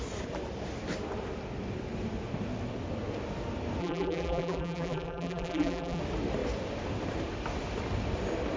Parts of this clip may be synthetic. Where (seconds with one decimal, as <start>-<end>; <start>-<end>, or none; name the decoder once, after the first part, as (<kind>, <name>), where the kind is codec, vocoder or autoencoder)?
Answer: 3.8-6.0 (vocoder, BigVGAN v2)